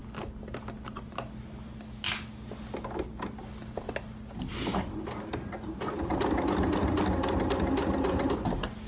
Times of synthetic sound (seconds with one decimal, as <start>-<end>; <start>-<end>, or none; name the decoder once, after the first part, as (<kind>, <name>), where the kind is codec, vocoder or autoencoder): none